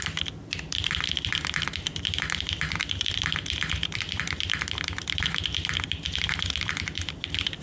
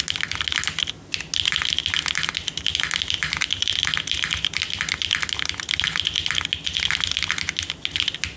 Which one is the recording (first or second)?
second